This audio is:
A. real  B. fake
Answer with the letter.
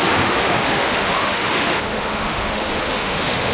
B